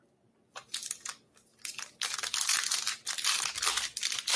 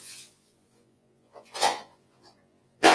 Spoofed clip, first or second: second